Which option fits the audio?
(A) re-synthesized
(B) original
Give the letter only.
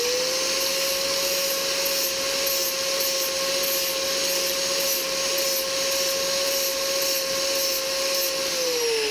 B